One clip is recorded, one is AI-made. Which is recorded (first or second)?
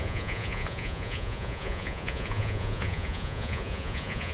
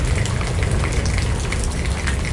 second